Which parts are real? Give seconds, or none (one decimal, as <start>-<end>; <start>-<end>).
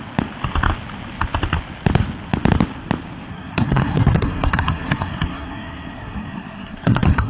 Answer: 0.0-3.3